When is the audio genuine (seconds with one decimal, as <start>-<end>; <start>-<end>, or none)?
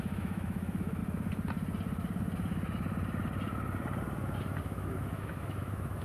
1.0-4.6